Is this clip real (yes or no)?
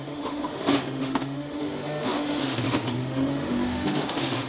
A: no